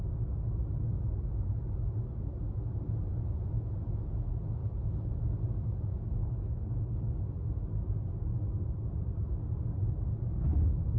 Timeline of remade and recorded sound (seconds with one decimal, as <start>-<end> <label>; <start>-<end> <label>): 0.0-4.6 recorded; 4.6-5.1 remade; 5.1-6.2 recorded; 6.2-7.0 remade; 7.0-11.0 recorded